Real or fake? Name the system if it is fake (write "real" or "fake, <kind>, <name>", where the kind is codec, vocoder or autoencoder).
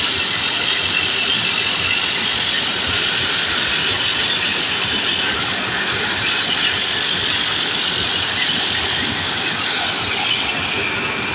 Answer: real